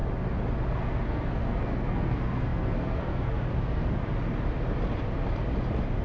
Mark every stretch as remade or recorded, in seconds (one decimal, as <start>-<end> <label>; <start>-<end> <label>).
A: 0.0-0.7 recorded; 0.7-4.0 remade; 4.0-6.0 recorded